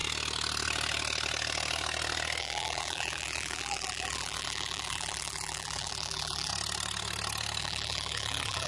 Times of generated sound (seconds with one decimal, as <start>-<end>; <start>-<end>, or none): 2.4-6.5; 7.6-8.7